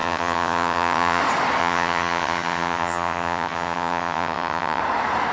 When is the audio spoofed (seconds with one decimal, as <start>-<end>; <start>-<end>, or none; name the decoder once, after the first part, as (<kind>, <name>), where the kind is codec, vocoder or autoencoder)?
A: 0.0-1.2 (vocoder, HiFi-GAN); 1.6-4.8